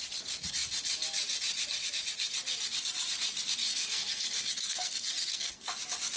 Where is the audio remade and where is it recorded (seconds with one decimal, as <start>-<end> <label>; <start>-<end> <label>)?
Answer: 0.0-3.6 recorded; 3.6-5.7 remade; 5.7-6.2 recorded